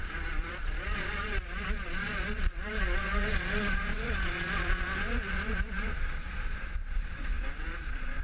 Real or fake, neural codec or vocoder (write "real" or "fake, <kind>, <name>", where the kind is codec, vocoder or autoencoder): fake, vocoder, Vocos